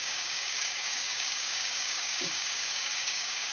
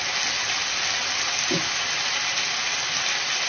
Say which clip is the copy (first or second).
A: first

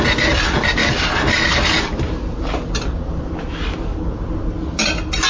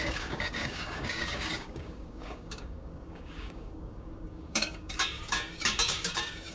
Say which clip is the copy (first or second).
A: second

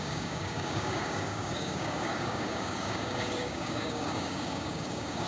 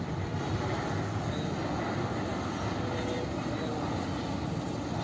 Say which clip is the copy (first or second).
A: first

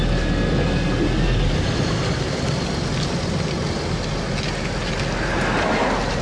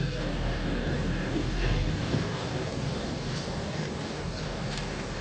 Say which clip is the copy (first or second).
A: second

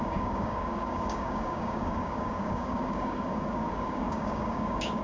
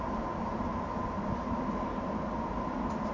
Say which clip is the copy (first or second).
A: first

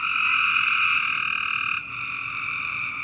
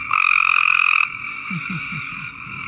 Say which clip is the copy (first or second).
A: second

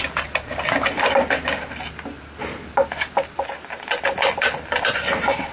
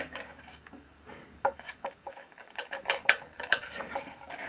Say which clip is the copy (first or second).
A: second